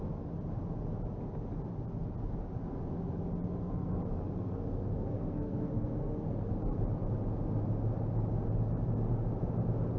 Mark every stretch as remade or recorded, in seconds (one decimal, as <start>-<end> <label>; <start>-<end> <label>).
0.0-3.6 recorded; 3.6-6.8 remade; 6.8-10.0 recorded